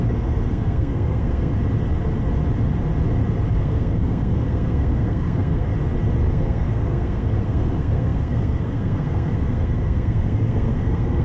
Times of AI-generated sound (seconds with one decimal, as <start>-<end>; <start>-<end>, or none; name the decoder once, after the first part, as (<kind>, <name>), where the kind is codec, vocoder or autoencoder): 0.0-1.5 (codec, SNAC); 3.5-5.7; 6.3-11.2